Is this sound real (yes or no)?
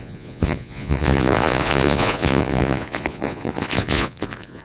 no